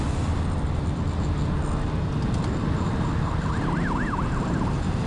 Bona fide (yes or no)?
yes